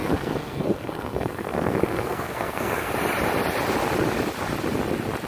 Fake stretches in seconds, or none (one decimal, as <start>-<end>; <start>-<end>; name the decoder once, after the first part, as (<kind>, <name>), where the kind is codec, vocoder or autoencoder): 0.0-2.9 (codec, SNAC)